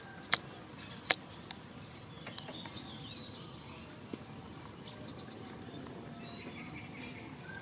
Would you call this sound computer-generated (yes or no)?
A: no